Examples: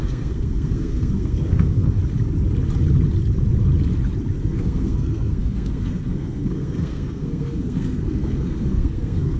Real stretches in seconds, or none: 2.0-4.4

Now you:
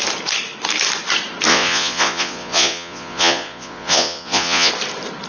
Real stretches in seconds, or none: 0.0-1.5; 4.7-5.3

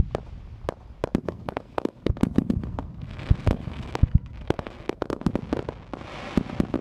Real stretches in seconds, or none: 0.0-1.2; 5.3-6.8

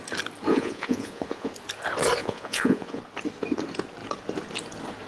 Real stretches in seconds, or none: 0.0-0.5; 1.5-2.2; 3.0-5.1

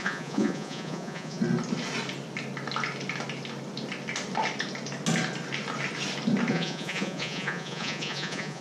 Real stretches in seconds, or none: 1.4-6.5